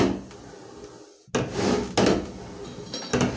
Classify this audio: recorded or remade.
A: recorded